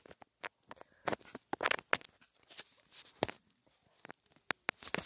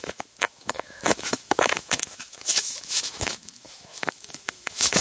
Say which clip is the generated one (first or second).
second